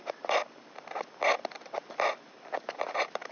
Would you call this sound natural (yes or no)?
yes